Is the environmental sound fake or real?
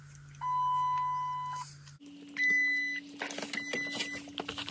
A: real